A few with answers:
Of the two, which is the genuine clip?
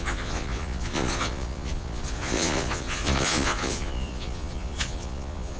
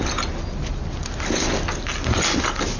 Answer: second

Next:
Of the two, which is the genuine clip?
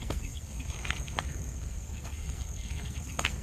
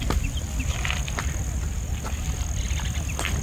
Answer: second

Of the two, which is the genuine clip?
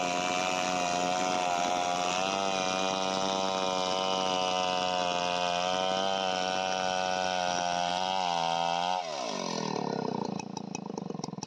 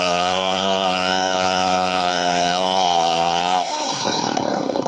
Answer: first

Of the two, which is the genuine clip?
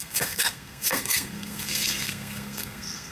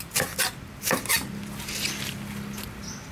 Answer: second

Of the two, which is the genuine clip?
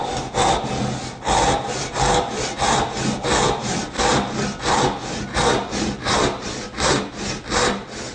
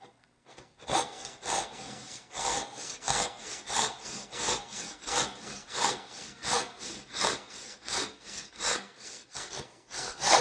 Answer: first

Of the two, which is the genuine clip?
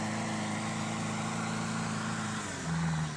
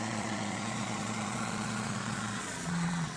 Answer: first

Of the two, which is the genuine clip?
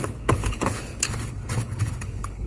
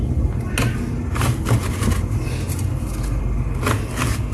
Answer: second